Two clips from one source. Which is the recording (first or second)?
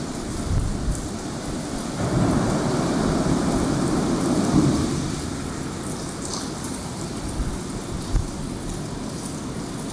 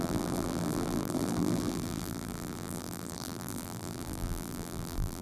first